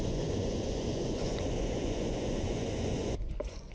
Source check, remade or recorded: remade